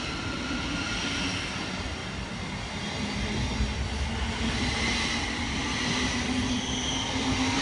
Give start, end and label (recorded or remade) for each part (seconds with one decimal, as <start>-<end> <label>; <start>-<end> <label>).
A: 0.0-7.6 recorded